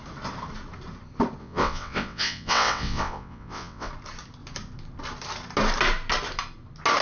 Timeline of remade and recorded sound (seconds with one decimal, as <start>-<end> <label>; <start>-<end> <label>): 0.0-1.4 recorded; 1.4-3.9 remade; 3.9-7.0 recorded